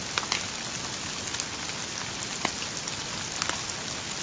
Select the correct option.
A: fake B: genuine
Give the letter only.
B